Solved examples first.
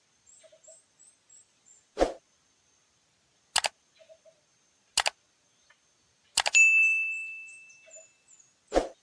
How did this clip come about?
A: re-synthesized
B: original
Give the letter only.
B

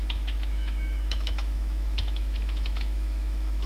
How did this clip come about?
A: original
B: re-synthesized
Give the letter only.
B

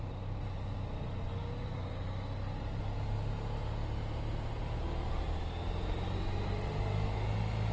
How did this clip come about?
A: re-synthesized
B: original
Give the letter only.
B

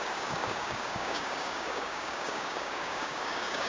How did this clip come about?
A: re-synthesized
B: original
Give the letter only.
A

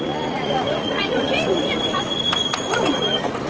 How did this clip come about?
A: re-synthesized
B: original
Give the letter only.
A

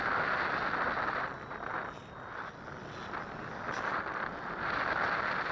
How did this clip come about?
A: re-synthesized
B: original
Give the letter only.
B